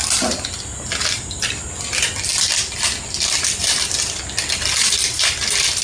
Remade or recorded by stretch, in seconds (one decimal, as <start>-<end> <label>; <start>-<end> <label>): 0.0-5.8 recorded